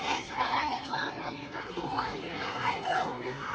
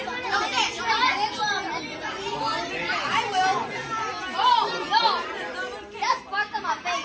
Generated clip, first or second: first